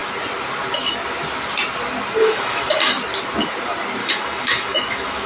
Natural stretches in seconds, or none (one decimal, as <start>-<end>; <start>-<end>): 0.0-2.2; 2.8-4.0

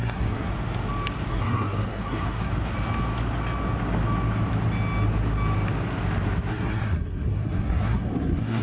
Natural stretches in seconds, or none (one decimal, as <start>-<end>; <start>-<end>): 0.5-1.3; 2.5-6.5

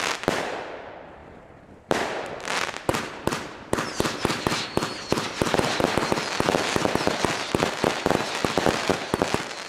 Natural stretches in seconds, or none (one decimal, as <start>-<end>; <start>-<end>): 0.0-1.2; 2.4-2.9; 5.8-9.7

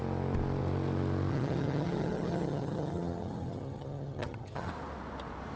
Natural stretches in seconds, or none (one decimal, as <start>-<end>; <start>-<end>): 0.0-1.3; 4.7-5.6

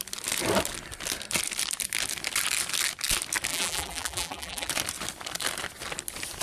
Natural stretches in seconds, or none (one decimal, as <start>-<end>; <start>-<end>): 0.0-3.5; 4.7-6.4